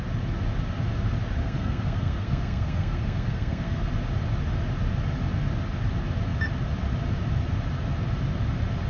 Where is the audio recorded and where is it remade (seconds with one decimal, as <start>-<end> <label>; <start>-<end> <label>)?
0.0-1.4 recorded; 1.4-3.8 remade; 3.8-8.9 recorded